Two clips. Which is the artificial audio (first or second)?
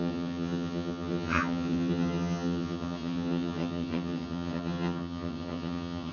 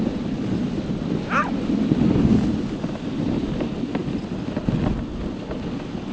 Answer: first